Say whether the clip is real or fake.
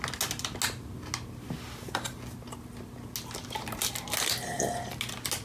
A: real